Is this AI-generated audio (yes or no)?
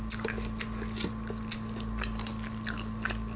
no